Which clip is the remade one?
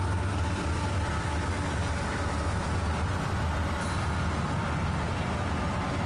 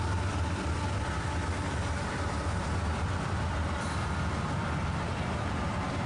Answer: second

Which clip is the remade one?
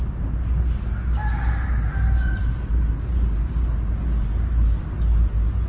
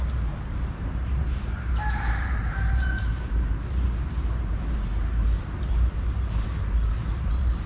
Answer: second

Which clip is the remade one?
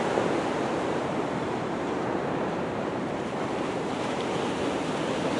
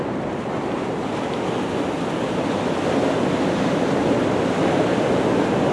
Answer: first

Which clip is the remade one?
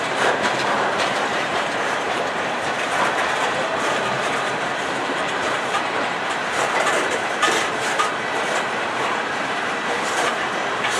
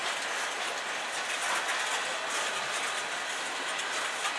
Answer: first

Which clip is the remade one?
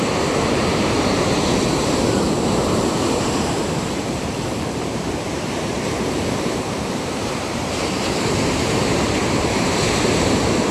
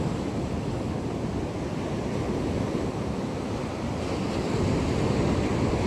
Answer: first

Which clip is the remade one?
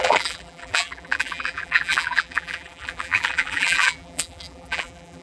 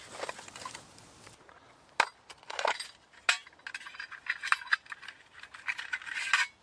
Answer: first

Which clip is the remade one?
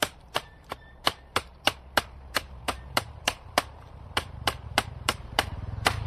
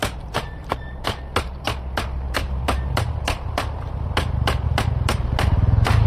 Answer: first